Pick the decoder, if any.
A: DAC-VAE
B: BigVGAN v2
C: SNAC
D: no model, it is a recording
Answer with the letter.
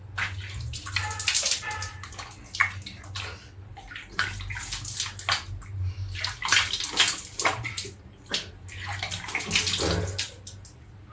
D